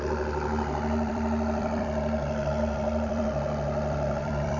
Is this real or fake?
fake